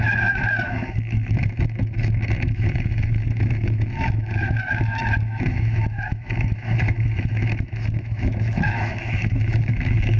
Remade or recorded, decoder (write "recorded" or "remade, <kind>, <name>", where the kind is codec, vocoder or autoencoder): remade, autoencoder, DAC-VAE